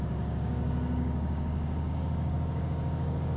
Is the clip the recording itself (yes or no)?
no